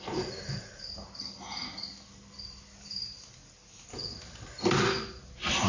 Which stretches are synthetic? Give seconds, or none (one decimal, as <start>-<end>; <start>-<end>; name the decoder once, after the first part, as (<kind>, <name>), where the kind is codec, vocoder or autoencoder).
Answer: none

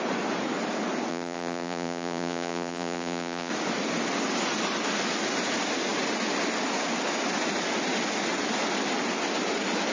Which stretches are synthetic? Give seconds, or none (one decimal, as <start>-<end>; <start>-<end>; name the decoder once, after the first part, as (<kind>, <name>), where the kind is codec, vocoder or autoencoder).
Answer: 1.1-3.5 (vocoder, Vocos)

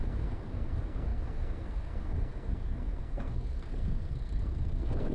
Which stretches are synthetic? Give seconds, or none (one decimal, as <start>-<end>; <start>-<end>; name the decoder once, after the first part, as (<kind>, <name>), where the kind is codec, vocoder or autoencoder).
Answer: 0.0-5.1 (codec, SNAC)

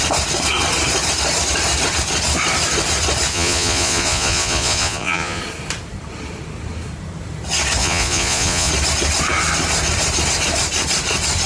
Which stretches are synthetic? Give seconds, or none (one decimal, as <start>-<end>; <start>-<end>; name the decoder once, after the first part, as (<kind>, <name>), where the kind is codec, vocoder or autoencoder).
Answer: 3.3-5.4 (vocoder, Vocos); 7.8-8.7

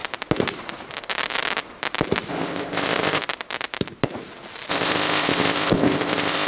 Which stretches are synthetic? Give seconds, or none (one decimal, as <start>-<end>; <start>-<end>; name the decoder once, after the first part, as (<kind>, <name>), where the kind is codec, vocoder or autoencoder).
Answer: 2.3-3.2 (codec, ZipCodec); 4.7-6.5

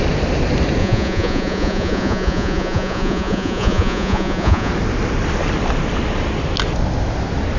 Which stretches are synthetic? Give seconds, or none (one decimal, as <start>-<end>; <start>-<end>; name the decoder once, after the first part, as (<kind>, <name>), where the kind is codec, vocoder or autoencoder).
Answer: 0.8-4.7 (vocoder, Vocos)

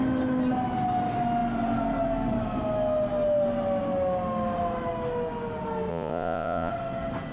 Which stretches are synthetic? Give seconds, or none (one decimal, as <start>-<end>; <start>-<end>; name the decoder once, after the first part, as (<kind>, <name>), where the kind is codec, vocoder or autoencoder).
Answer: 5.9-6.7 (vocoder, Vocos)